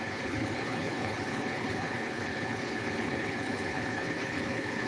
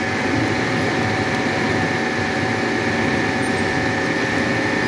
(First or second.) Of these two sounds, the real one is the second